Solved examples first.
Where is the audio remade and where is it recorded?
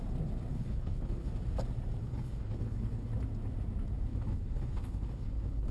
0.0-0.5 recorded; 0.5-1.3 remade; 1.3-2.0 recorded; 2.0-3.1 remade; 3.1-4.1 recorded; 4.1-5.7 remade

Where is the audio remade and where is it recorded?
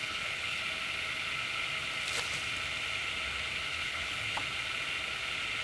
0.0-0.6 remade; 0.6-3.7 recorded; 3.7-4.4 remade; 4.4-5.6 recorded